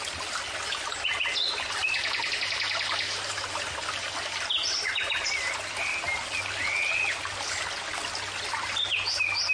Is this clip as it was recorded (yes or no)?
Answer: yes